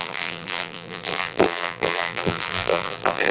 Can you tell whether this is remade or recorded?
remade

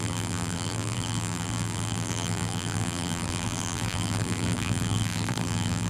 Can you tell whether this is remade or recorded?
remade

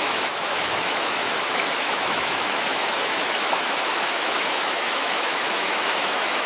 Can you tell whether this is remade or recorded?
remade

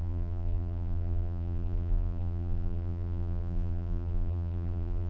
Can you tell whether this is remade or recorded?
remade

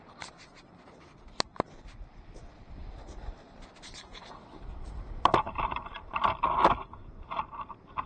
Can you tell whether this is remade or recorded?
recorded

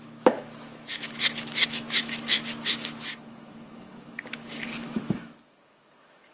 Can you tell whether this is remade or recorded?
remade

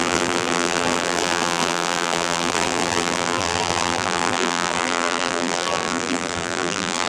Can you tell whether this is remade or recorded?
remade